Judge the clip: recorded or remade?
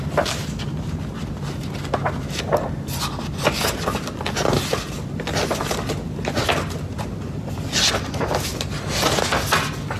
recorded